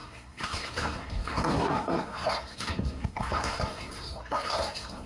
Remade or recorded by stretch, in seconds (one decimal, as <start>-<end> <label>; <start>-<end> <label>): 0.0-5.1 remade